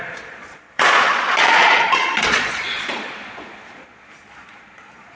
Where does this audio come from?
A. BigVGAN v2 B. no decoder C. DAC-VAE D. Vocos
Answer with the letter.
D